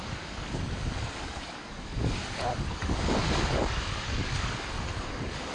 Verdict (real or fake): fake